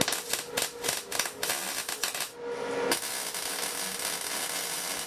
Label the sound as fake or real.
real